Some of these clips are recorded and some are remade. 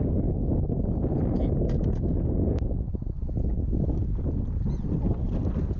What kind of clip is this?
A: recorded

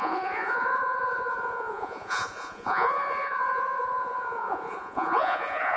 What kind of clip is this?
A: remade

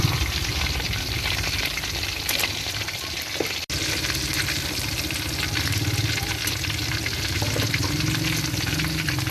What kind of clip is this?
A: recorded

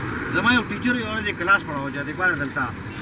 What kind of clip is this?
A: recorded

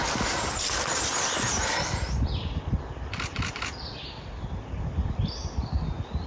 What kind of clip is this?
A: remade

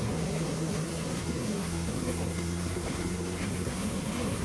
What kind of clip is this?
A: remade